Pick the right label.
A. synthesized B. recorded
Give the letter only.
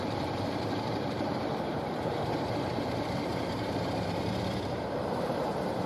A